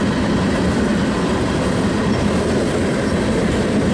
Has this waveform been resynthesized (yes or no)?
no